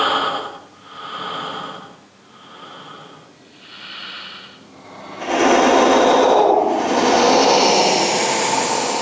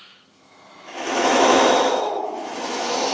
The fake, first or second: second